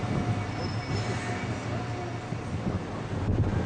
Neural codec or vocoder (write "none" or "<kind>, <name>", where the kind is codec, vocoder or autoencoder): none